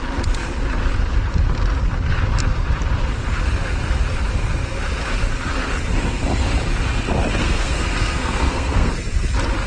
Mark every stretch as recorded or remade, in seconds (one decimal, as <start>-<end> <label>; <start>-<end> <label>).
0.0-7.4 recorded; 7.4-8.9 remade; 8.9-9.7 recorded